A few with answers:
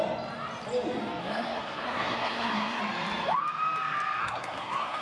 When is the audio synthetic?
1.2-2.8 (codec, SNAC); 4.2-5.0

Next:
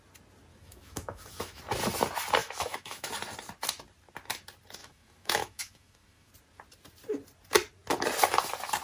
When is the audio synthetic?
0.5-1.6 (autoencoder, DAC-VAE); 2.4-3.1; 4.8-6.3

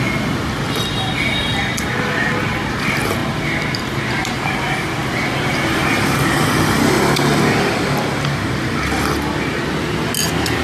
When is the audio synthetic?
none

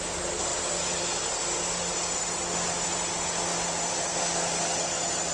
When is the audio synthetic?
none

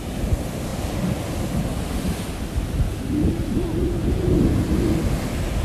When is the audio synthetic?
none

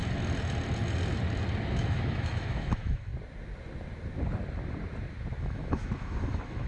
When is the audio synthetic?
1.7-3.1 (autoencoder, DAC-VAE); 5.4-6.7

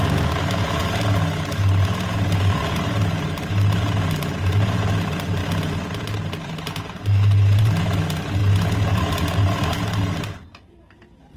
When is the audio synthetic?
0.0-0.8 (vocoder, BigVGAN v2); 1.7-5.4; 6.2-8.4; 10.1-11.4